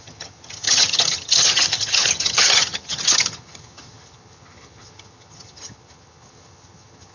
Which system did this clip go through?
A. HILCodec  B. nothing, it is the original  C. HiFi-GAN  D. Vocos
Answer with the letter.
C